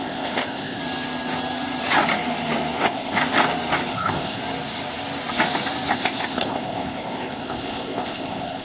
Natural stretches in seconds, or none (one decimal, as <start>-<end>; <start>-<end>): 0.8-2.8; 3.2-3.9; 4.4-5.9